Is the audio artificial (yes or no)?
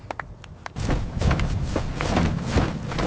yes